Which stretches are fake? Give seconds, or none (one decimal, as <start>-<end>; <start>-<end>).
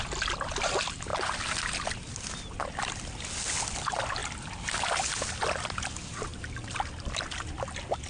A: none